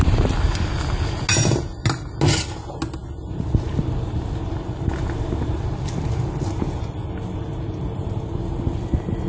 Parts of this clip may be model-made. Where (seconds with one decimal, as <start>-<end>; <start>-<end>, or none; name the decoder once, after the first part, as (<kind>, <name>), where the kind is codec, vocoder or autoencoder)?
none